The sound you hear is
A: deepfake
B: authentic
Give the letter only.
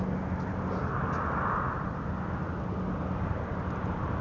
B